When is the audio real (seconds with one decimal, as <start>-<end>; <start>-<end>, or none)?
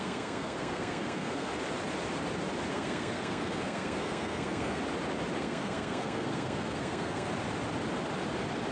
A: 1.5-2.7; 4.8-5.4; 7.3-8.7